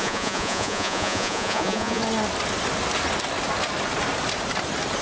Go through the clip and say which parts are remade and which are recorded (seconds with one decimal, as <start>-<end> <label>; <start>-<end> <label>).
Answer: 0.0-2.0 remade; 2.0-5.0 recorded